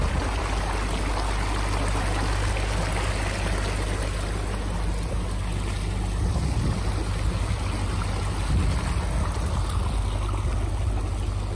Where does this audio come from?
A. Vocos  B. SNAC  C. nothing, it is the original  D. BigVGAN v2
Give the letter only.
C